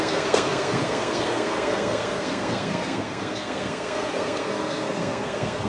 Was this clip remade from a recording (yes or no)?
yes